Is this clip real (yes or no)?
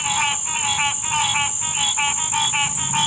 yes